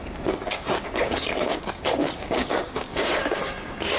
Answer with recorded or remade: remade